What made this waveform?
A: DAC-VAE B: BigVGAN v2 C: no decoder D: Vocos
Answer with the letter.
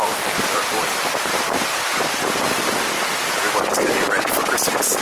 C